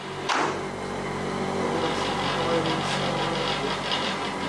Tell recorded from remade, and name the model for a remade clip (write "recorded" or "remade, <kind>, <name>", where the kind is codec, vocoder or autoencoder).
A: recorded